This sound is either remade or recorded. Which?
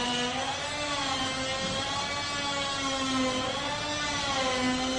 recorded